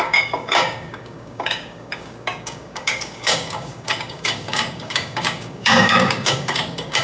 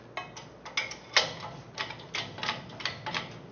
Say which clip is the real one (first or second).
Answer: second